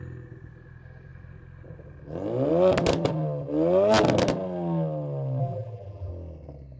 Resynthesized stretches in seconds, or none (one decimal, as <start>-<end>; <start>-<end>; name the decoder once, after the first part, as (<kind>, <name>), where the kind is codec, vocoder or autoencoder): 5.4-6.1 (vocoder, BigVGAN v2)